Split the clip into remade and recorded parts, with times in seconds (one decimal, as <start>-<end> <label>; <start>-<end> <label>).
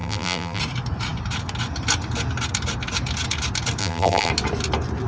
0.0-0.6 remade; 0.6-3.8 recorded; 3.8-4.3 remade; 4.3-5.1 recorded